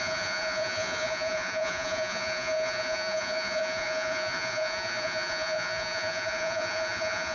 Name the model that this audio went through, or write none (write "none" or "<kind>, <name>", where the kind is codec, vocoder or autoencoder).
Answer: vocoder, Vocos